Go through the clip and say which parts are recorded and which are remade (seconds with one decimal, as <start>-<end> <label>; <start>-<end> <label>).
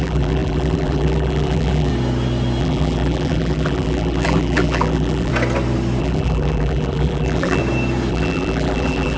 0.0-1.9 remade; 1.9-2.6 recorded; 2.6-5.3 remade; 5.3-6.0 recorded; 6.0-7.6 remade; 7.6-8.1 recorded; 8.1-9.2 remade